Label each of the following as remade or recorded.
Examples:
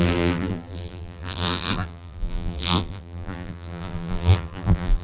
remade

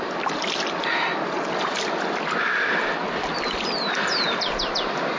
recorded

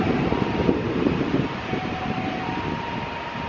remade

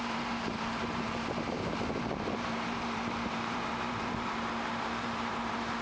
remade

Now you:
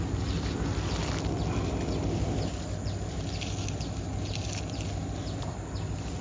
recorded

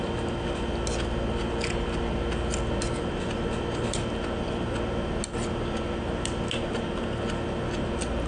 recorded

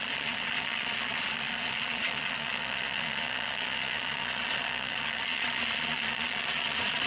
remade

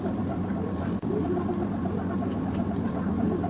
recorded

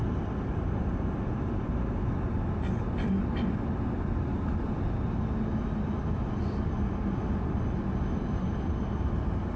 recorded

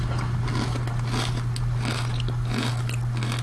recorded